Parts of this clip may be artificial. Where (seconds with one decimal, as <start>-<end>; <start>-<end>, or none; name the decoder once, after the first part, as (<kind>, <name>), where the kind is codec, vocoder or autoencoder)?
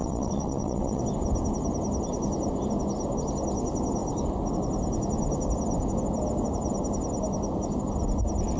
0.0-1.0 (vocoder, WaveNeXt)